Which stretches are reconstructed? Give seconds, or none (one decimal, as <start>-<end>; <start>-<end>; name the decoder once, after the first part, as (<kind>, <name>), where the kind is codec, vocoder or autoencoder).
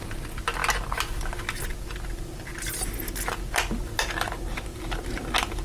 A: none